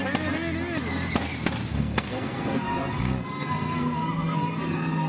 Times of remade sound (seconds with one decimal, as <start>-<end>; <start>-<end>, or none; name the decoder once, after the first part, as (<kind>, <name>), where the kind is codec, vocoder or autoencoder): 1.7-5.1 (codec, SNAC)